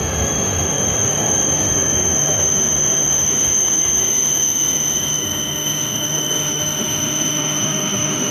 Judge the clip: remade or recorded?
remade